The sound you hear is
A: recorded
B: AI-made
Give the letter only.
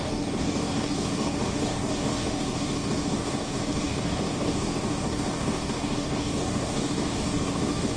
B